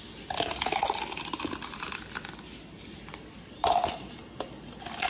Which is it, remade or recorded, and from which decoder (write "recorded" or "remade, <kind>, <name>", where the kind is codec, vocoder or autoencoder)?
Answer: recorded